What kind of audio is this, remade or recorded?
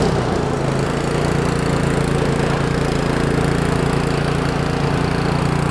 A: recorded